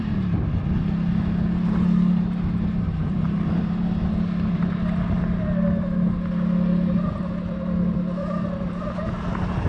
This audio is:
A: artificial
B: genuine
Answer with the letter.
B